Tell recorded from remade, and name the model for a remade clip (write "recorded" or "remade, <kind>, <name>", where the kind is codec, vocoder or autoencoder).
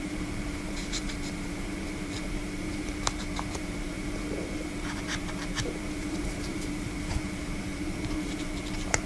remade, vocoder, BigVGAN v2